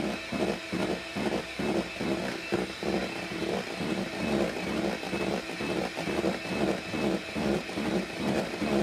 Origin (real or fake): fake